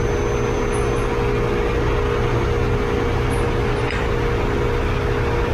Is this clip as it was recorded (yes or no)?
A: yes